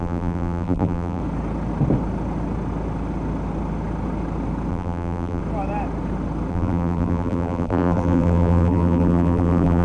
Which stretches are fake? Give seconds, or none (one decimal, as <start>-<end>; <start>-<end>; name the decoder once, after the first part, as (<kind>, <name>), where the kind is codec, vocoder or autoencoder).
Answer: 0.0-1.2 (vocoder, BigVGAN v2); 4.7-5.4; 6.5-9.8